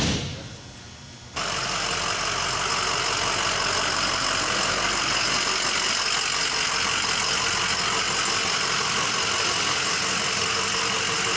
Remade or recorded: recorded